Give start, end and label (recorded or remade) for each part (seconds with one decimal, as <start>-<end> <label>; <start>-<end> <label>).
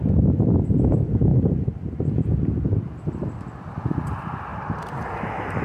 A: 0.0-5.6 recorded